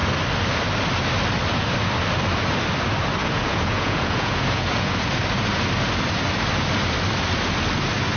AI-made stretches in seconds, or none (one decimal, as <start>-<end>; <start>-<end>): 3.2-5.1